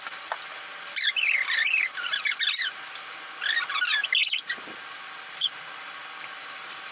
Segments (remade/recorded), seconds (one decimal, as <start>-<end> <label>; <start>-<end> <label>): 0.0-6.9 recorded